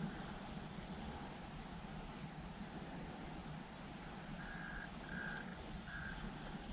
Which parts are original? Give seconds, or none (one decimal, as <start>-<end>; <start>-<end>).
0.0-5.5; 6.2-6.7